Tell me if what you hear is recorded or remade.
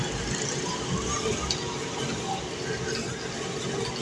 recorded